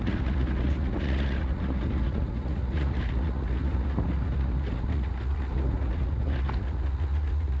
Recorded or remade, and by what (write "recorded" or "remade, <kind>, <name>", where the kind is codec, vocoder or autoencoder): remade, vocoder, Vocos